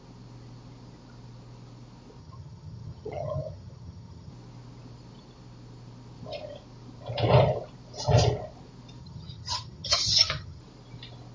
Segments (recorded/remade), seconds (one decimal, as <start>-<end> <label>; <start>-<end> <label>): 0.0-2.2 recorded; 2.2-4.3 remade; 4.3-9.0 recorded; 9.0-10.6 remade; 10.6-11.3 recorded